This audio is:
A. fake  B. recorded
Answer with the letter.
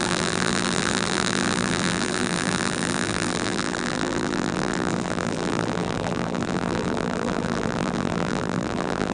A